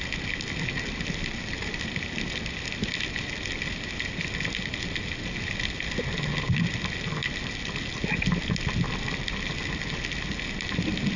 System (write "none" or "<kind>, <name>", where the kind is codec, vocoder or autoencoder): none